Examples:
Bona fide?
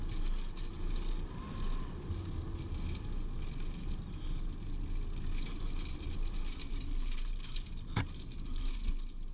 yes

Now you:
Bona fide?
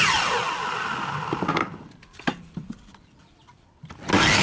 yes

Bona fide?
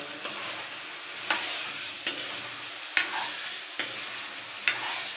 yes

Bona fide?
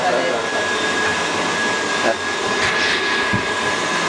yes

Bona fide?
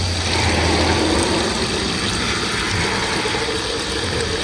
yes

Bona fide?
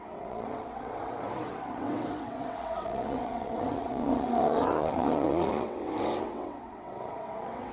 no